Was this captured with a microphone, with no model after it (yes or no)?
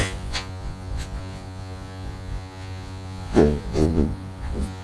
no